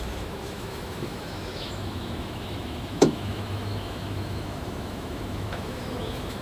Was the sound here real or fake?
fake